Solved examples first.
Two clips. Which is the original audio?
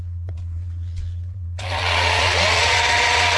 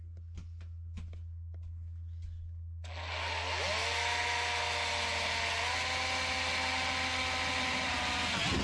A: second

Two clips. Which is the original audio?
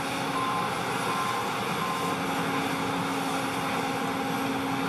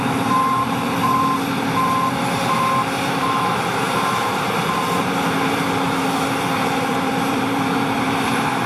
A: first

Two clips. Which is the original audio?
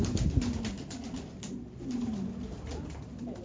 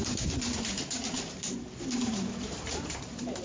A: first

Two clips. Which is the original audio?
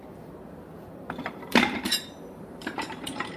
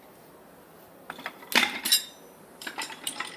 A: second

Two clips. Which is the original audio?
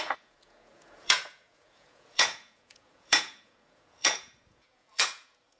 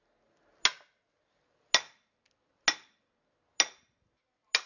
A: second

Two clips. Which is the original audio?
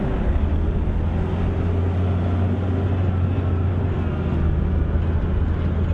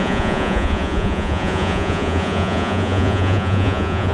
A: first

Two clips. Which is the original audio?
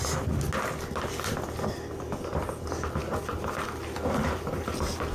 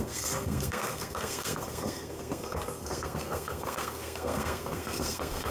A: first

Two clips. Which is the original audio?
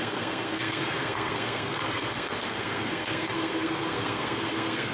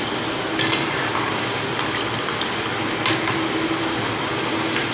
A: second